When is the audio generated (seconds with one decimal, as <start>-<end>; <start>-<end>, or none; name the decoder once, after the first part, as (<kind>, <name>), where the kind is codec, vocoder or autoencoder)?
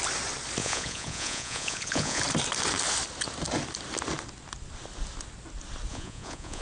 0.6-2.2 (vocoder, Vocos); 5.9-6.6